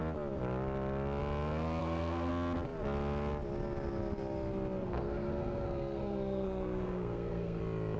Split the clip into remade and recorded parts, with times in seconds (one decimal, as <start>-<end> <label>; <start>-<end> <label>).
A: 0.0-1.8 recorded; 1.8-2.3 remade; 2.3-4.8 recorded; 4.8-7.6 remade; 7.6-8.0 recorded